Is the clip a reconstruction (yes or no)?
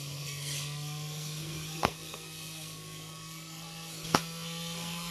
yes